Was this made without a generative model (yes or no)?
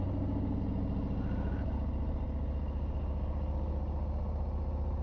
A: yes